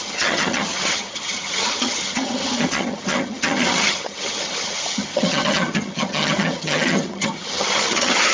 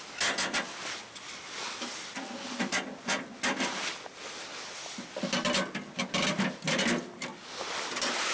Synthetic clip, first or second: first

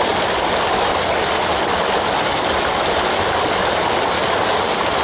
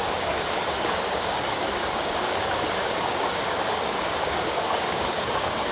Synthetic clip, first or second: second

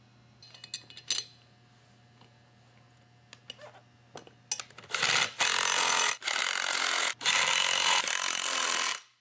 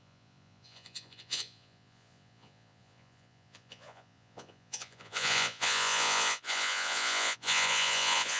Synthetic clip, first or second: second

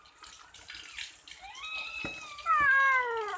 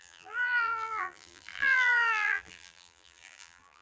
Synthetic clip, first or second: second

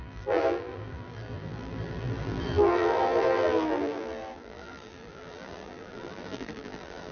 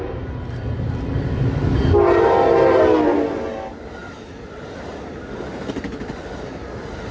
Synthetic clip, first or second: first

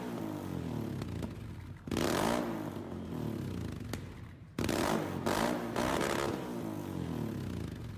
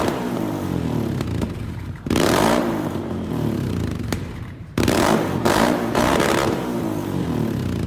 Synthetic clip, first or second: second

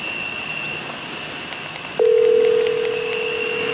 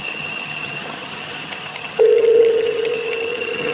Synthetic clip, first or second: second